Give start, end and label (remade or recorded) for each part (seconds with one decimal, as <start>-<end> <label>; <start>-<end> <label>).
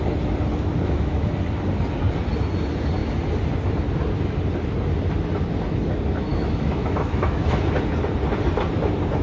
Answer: 0.0-0.7 recorded; 0.7-1.3 remade; 1.3-6.3 recorded; 6.3-7.6 remade; 7.6-9.2 recorded